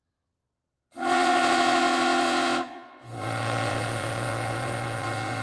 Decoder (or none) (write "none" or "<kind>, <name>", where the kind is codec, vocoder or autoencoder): vocoder, Vocos